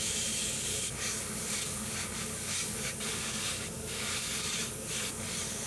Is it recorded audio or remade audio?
remade